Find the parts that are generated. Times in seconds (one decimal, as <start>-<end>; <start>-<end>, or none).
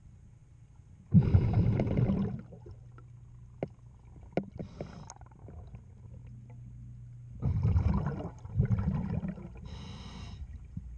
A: none